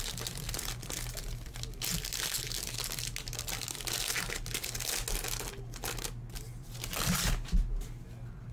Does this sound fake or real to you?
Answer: real